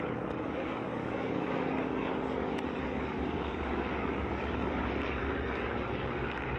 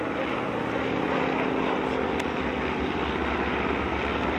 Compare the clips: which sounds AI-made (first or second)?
first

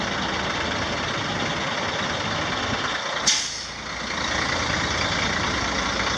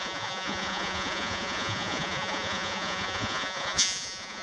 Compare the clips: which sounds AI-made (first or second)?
second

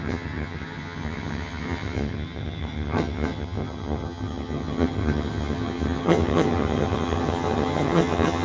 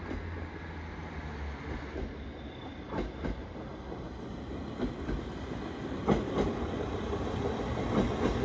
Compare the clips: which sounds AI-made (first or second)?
first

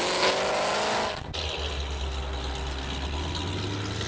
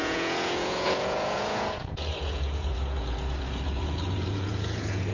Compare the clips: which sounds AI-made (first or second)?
second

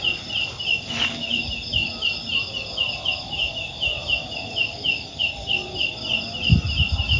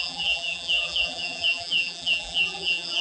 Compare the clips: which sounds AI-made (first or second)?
second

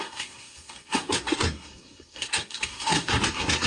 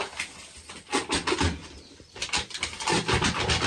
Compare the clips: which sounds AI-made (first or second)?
first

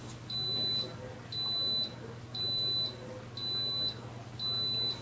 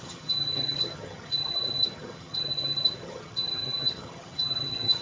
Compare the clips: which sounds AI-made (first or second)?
second